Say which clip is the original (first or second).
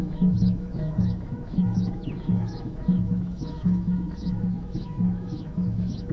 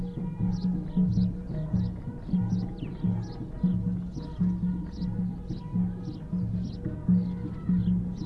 second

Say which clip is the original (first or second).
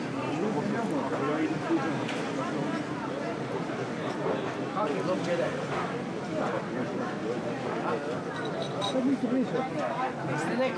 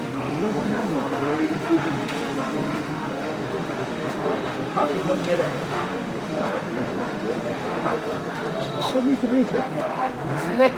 first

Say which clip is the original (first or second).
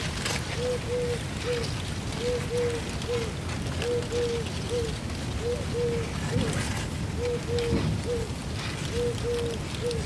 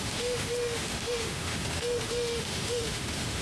first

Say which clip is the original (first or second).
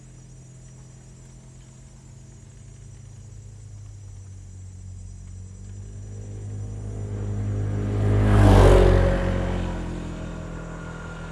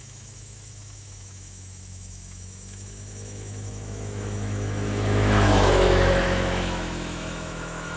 first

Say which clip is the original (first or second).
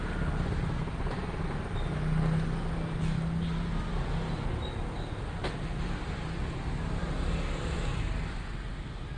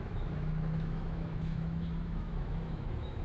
first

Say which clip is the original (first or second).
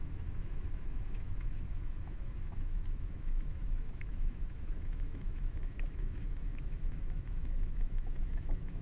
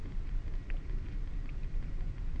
second